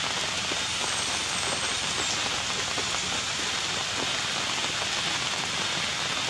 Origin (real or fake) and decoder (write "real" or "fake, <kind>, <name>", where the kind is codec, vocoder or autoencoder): real